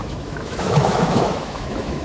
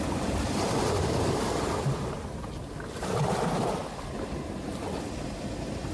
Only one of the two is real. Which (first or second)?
second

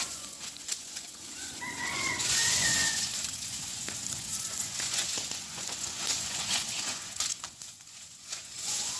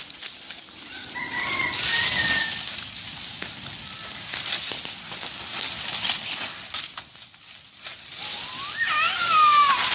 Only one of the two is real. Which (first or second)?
second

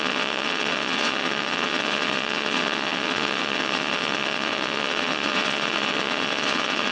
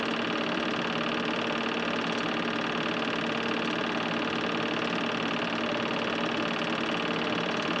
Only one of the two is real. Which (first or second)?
second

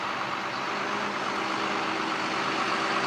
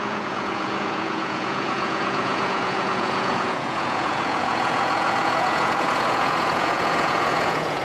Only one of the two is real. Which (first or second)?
first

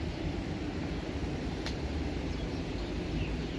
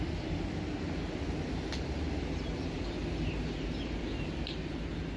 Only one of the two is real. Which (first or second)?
second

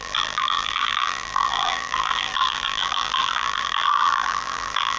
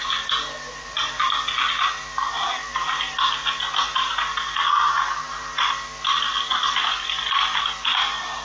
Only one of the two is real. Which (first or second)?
second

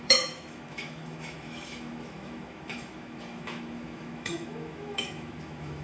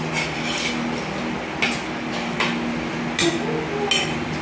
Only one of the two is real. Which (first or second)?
second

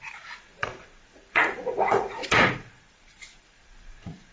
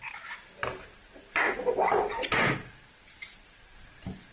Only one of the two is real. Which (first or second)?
second